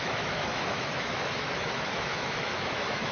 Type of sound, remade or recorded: remade